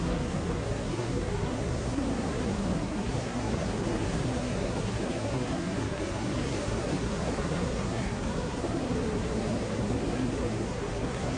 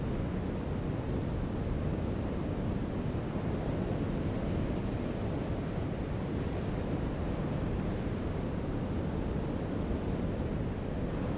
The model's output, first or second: first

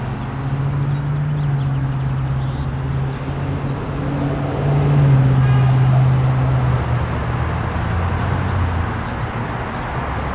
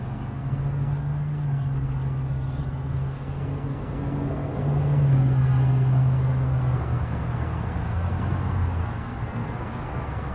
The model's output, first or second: second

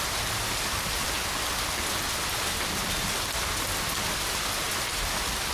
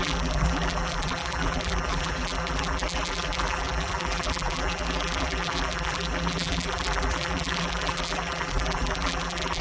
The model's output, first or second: second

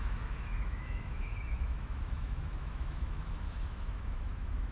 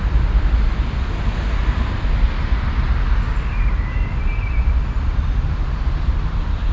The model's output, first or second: first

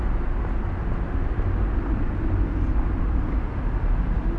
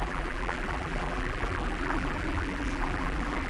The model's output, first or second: second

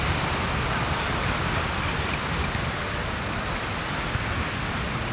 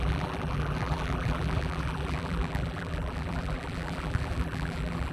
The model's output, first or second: second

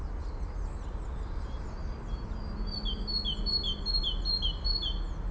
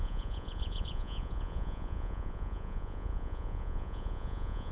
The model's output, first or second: second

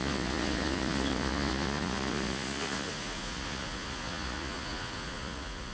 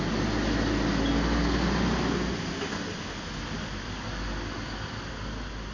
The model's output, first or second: first